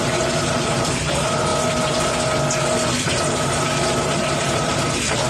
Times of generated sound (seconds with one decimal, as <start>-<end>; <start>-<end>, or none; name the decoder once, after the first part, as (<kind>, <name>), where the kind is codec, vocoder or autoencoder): 0.0-1.5 (vocoder, BigVGAN v2); 3.2-5.3